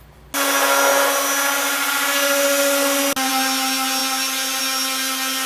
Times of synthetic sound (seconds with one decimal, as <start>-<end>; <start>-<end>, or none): none